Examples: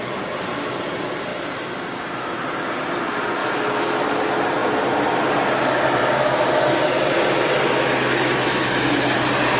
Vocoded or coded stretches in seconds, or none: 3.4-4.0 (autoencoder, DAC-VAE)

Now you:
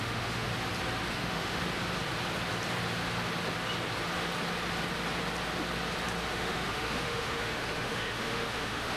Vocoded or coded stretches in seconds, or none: 0.0-0.5 (autoencoder, DAC-VAE); 1.1-1.6; 6.3-9.0

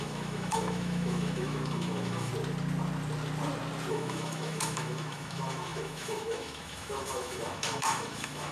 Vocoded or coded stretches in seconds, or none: 0.0-2.3 (autoencoder, DAC-VAE); 3.9-8.5